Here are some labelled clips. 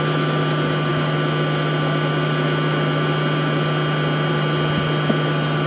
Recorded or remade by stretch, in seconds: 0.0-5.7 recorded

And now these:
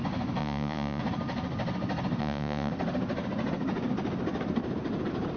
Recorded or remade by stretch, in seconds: 0.0-0.4 recorded; 0.4-1.0 remade; 1.0-2.2 recorded; 2.2-2.7 remade; 2.7-5.4 recorded

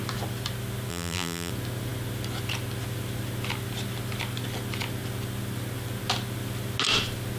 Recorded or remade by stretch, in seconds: 0.0-0.9 recorded; 0.9-1.5 remade; 1.5-7.4 recorded